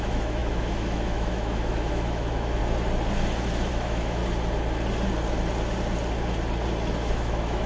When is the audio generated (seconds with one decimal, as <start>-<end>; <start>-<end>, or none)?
0.0-2.6; 3.7-4.2; 7.1-7.7